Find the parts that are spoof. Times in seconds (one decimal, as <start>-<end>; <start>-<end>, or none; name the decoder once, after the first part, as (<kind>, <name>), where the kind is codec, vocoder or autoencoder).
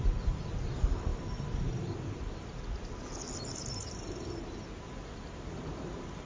none